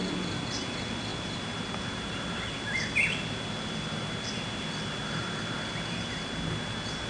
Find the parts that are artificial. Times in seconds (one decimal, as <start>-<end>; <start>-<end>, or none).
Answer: none